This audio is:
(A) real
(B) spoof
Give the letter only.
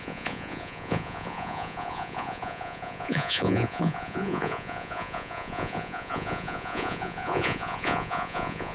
B